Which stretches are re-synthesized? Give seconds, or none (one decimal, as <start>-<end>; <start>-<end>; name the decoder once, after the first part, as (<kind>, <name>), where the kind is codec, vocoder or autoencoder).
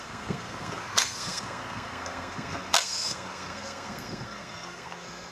0.0-5.3 (codec, SNAC)